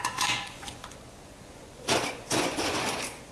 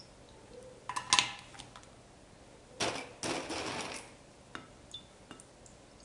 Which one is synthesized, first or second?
first